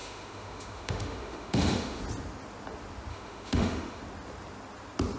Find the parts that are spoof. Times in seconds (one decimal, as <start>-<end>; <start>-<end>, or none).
0.0-2.0; 3.1-4.0